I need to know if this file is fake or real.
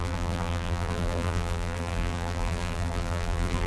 fake